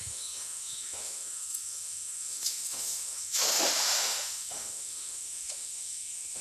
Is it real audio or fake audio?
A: fake